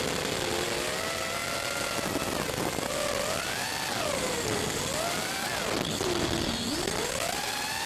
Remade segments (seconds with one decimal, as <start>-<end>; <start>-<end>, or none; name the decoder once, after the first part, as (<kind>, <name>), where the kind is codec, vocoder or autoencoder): none

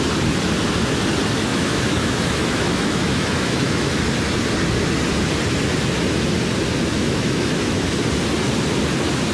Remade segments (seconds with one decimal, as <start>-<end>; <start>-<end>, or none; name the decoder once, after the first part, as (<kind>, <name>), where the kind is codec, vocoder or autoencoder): 1.5-4.0 (autoencoder, DAC-VAE); 6.9-7.9

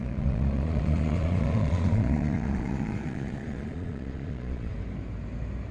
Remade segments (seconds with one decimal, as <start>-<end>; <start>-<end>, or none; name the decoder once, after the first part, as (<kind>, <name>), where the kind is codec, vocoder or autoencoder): 0.0-4.7 (vocoder, Vocos)

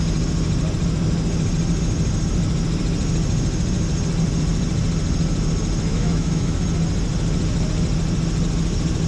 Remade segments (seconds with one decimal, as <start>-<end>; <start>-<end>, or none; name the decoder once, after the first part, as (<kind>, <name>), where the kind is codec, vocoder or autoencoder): 5.9-6.6 (autoencoder, DAC-VAE)

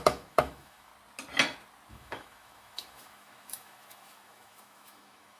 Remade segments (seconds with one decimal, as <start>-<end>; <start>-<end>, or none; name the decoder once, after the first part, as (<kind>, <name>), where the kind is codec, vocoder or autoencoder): 0.0-0.9 (autoencoder, DAC-VAE); 1.9-5.4

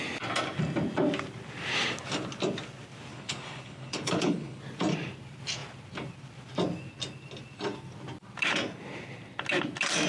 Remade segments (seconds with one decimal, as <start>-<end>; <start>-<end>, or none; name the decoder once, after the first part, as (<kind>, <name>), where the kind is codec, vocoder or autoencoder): 3.1-4.6 (codec, HILCodec)

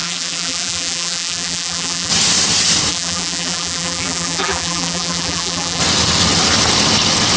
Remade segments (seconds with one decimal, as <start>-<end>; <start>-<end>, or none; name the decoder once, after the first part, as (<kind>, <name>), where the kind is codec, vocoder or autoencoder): 0.0-2.1 (vocoder, BigVGAN v2); 2.9-5.8